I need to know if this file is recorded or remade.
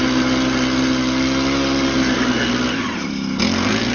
recorded